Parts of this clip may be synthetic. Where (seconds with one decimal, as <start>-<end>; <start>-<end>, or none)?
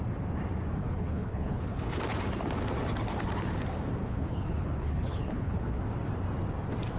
0.8-2.0; 4.0-5.8